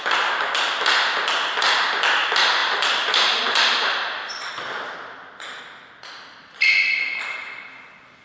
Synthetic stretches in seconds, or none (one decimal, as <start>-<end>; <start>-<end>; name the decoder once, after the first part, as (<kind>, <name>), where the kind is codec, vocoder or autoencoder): 2.6-5.6 (vocoder, BigVGAN v2)